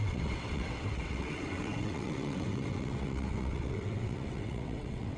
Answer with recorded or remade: remade